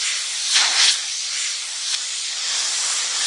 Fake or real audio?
real